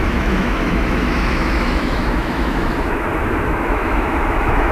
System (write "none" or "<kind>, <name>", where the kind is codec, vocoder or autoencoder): autoencoder, DAC-VAE